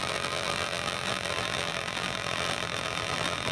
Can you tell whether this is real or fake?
fake